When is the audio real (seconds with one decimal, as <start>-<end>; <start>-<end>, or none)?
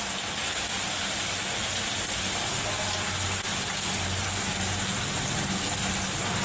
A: 0.0-3.5; 4.2-6.4